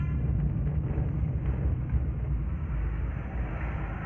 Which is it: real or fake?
real